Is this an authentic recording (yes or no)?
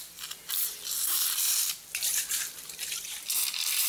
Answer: no